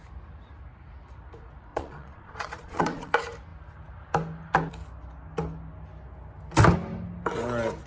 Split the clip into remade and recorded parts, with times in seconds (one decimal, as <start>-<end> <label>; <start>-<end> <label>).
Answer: 0.0-1.7 recorded; 1.7-3.1 remade; 3.1-7.9 recorded